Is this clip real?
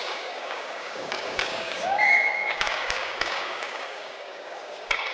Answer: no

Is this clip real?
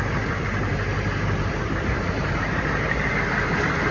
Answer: no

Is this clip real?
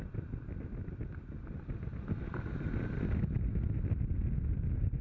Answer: yes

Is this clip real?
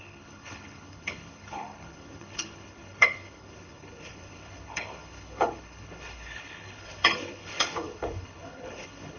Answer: no